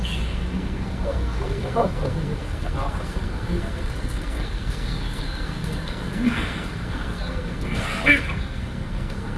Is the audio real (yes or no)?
no